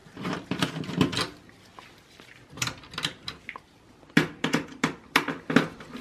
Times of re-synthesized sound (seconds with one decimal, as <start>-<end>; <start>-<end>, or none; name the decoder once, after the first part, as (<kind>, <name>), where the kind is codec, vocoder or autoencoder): 0.0-0.7 (vocoder, BigVGAN v2)